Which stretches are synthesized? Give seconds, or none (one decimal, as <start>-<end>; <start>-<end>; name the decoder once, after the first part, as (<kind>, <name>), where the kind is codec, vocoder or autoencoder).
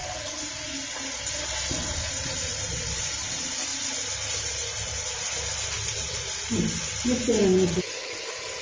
none